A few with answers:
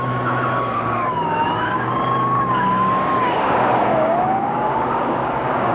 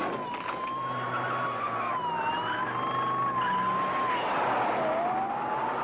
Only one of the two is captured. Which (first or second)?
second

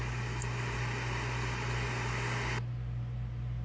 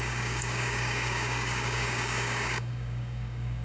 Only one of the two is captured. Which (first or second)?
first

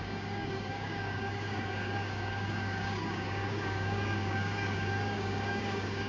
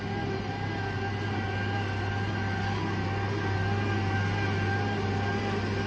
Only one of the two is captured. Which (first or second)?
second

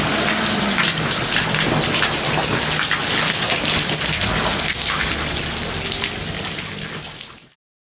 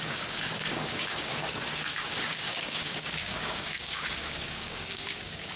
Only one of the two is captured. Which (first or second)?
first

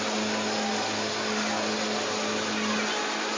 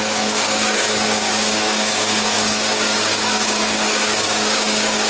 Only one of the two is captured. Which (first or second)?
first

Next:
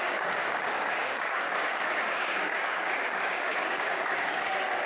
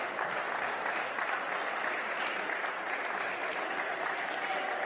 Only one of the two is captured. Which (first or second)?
second